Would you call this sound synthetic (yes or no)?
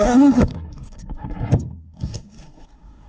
yes